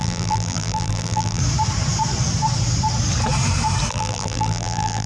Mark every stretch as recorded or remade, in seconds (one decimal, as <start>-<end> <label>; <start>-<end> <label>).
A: 0.0-1.4 remade; 1.4-3.9 recorded; 3.9-5.1 remade